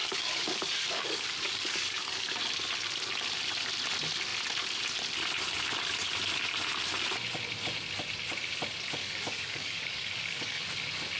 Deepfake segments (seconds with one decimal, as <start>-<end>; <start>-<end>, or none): 0.0-2.4; 9.0-10.6